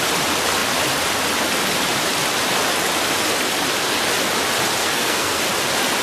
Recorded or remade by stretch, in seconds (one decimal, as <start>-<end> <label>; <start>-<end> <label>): 0.0-4.8 recorded; 4.8-5.4 remade; 5.4-6.0 recorded